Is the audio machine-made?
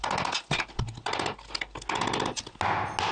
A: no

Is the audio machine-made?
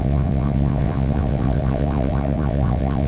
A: yes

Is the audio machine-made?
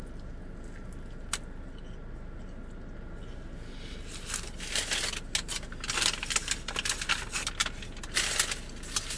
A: no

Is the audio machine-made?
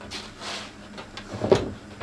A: no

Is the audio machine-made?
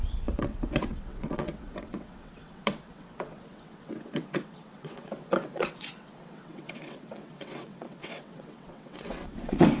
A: yes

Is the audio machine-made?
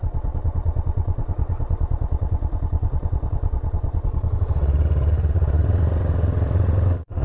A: yes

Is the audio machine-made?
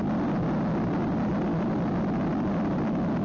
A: no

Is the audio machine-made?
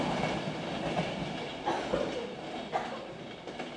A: no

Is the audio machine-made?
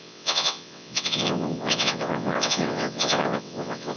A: yes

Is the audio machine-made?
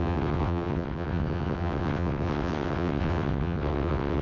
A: yes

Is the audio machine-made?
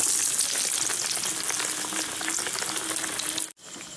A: no